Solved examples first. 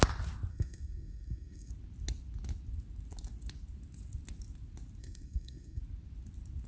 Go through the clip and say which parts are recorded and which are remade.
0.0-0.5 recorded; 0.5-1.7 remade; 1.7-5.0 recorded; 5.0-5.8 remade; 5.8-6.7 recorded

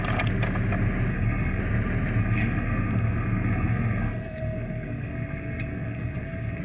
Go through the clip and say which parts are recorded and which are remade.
0.0-1.1 recorded; 1.1-1.6 remade; 1.6-2.2 recorded; 2.2-6.6 remade

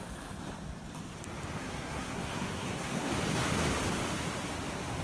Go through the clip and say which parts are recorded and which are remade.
0.0-1.6 recorded; 1.6-3.1 remade; 3.1-5.0 recorded

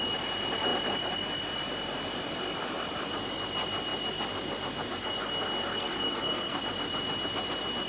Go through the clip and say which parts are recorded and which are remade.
0.0-5.7 recorded; 5.7-6.6 remade; 6.6-7.9 recorded

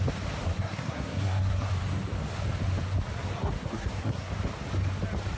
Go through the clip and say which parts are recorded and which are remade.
0.0-0.4 recorded; 0.4-1.7 remade; 1.7-3.4 recorded; 3.4-4.3 remade; 4.3-5.4 recorded

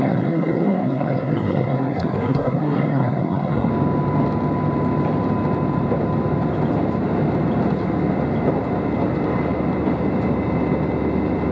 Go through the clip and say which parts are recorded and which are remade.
0.0-3.7 remade; 3.7-11.5 recorded

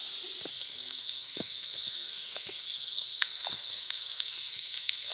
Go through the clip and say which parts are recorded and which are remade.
0.0-0.5 recorded; 0.5-5.1 remade